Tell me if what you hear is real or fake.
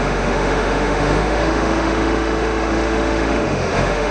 fake